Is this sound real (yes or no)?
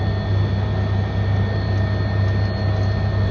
yes